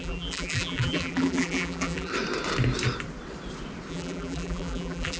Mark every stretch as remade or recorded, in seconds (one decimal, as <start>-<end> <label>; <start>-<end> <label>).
0.0-2.1 remade; 2.1-3.9 recorded; 3.9-5.2 remade